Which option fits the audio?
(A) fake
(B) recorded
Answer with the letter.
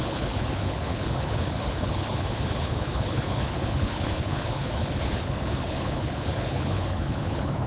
A